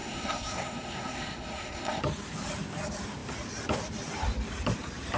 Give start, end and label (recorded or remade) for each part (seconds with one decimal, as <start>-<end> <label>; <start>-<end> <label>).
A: 0.0-2.0 remade; 2.0-5.2 recorded